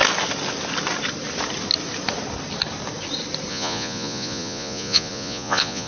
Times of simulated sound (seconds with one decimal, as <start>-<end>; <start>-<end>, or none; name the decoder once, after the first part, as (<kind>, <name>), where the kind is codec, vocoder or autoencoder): 3.5-5.9 (vocoder, Vocos)